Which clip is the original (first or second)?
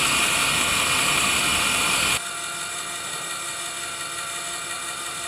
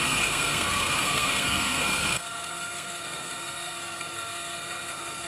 first